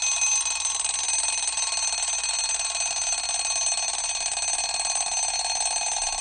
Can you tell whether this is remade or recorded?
recorded